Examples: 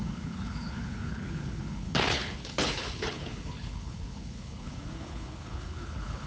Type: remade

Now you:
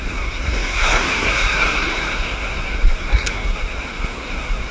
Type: remade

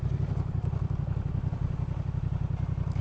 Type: remade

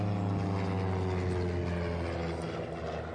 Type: recorded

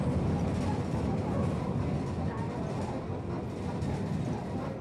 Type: recorded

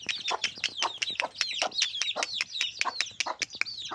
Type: recorded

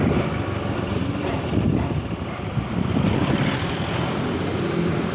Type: recorded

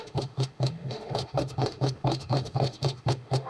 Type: remade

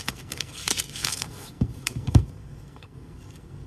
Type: remade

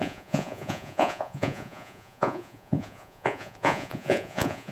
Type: remade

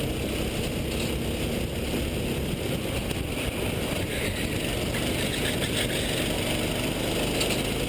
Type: recorded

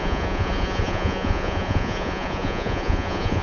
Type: remade